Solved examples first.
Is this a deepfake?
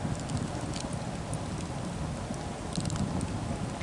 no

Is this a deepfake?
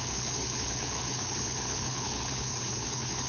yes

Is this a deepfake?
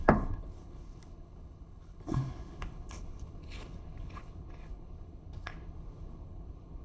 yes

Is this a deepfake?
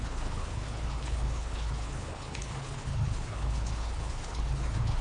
yes